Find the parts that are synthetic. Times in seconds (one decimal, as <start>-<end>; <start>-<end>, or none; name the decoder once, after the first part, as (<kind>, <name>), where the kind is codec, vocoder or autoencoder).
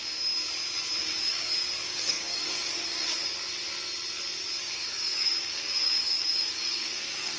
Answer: 1.0-3.1 (codec, DAC); 4.6-7.4